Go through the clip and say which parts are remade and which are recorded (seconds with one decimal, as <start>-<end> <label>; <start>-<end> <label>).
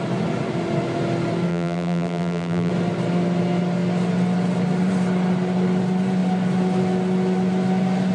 0.0-1.5 recorded; 1.5-2.7 remade; 2.7-8.1 recorded